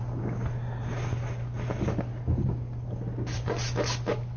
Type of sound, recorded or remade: recorded